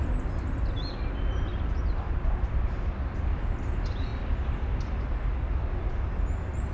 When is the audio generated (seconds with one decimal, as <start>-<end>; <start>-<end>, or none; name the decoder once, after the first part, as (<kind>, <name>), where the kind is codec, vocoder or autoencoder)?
none